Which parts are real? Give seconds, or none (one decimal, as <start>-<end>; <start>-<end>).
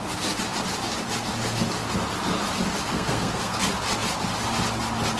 0.0-2.9; 3.6-5.2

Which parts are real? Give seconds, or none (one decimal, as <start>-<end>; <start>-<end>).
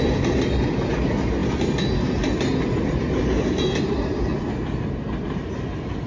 0.0-6.1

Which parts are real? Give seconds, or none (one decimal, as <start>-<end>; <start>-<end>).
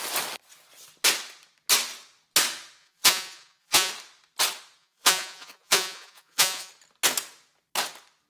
0.0-2.8; 3.9-4.8; 6.7-8.3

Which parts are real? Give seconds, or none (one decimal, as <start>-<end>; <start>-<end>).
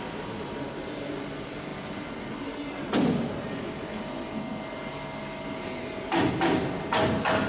0.0-7.5